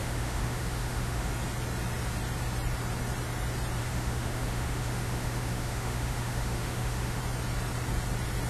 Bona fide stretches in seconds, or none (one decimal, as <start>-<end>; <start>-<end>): 1.3-3.8; 7.2-8.5

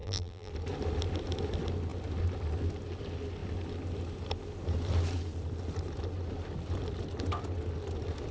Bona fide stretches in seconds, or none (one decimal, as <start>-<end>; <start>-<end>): 0.5-8.3